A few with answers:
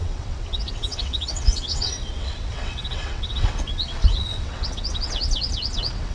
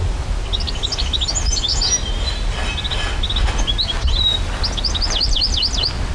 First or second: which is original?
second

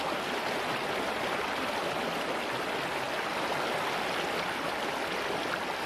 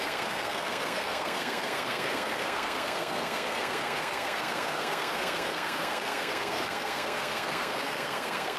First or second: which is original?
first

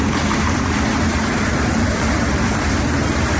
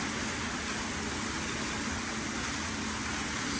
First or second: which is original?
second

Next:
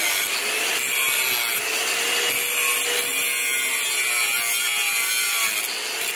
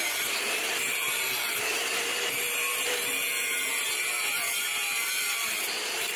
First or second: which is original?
first